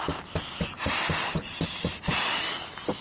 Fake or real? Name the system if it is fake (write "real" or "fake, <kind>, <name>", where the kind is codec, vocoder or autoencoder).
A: real